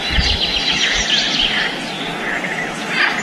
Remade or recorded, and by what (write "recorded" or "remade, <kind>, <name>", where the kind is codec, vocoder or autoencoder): recorded